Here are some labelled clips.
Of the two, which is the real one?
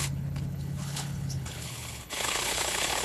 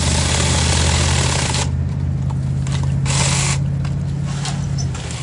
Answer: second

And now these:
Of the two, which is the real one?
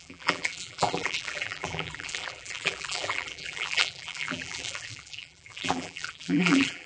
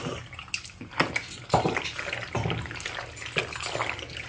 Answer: second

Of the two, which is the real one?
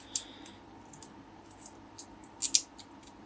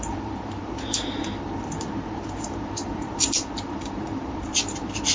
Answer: first